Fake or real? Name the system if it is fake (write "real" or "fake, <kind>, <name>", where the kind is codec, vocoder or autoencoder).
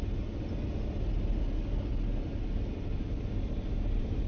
real